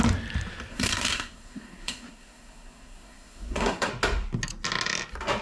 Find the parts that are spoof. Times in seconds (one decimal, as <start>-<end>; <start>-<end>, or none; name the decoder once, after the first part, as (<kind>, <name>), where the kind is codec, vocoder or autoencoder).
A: 0.7-3.9 (codec, SNAC)